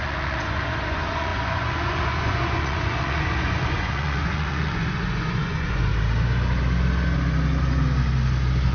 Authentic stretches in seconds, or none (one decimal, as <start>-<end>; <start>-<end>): 5.9-8.7